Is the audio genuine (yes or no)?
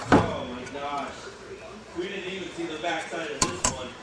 no